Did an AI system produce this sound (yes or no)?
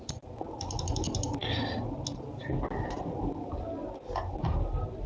no